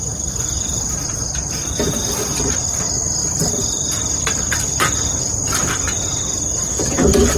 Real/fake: real